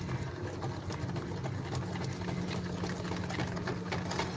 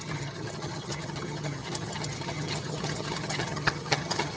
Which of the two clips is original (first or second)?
first